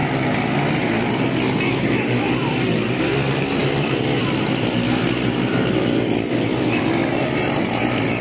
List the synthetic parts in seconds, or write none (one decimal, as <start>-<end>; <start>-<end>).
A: 0.9-7.0